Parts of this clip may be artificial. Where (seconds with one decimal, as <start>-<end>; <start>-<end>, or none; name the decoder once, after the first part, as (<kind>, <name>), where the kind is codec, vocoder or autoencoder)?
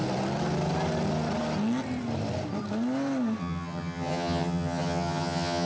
3.4-5.7 (vocoder, HiFi-GAN)